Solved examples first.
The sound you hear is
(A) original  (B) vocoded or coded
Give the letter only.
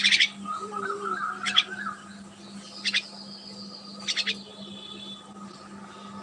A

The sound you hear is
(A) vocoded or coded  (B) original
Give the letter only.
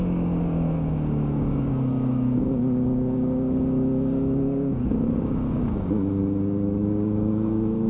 A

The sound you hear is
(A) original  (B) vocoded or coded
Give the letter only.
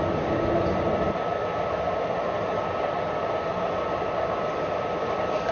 A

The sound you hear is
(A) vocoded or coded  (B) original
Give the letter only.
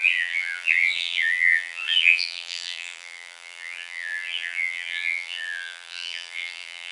A